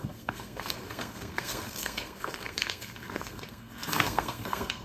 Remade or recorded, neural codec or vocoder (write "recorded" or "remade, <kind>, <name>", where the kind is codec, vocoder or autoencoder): remade, codec, SNAC